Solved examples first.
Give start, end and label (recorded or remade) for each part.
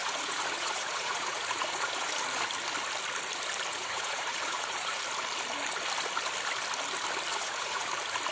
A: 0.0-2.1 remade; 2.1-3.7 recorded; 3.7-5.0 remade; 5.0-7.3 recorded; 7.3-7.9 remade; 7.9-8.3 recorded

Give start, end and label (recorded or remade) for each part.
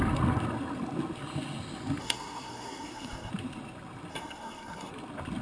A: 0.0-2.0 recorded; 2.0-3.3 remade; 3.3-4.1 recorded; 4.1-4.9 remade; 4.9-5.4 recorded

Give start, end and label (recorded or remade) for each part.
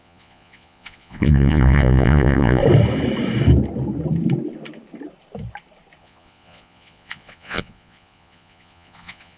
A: 0.0-2.6 remade; 2.6-6.0 recorded; 6.0-9.4 remade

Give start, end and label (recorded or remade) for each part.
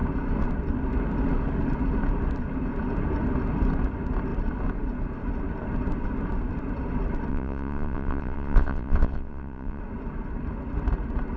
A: 0.0-7.3 recorded; 7.3-9.8 remade; 9.8-11.4 recorded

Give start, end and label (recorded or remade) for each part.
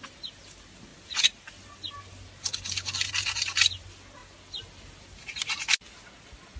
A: 0.0-6.6 recorded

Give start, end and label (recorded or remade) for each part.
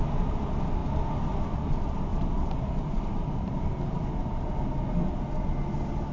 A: 0.0-2.1 recorded; 2.1-3.6 remade; 3.6-6.1 recorded